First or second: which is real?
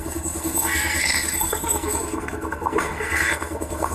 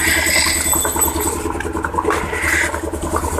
second